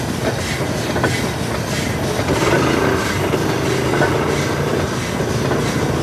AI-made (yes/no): no